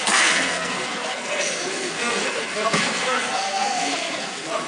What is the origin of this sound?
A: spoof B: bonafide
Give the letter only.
A